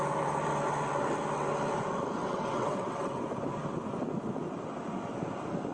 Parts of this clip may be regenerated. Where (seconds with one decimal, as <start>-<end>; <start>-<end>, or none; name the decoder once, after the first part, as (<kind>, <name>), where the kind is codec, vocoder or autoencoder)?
2.2-3.2 (vocoder, WaveNeXt)